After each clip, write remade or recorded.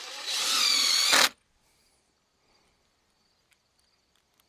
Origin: recorded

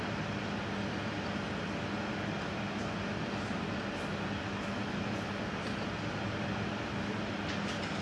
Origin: recorded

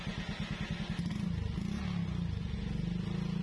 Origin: recorded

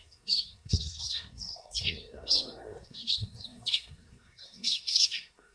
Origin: remade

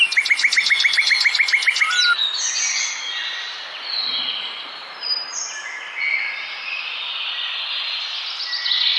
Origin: recorded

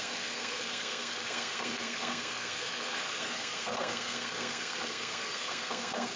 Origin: remade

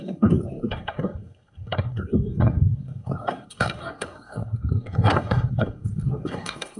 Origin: remade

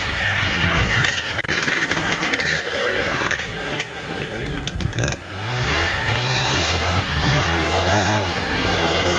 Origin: remade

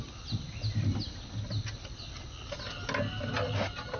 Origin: recorded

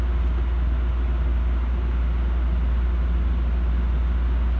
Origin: recorded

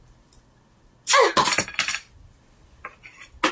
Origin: recorded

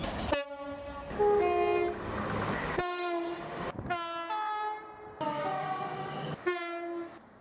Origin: recorded